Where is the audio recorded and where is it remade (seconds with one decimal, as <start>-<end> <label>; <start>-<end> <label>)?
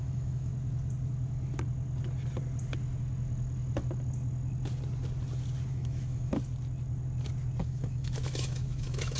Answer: 0.0-0.5 remade; 0.5-5.7 recorded; 5.7-6.3 remade; 6.3-7.6 recorded; 7.6-9.2 remade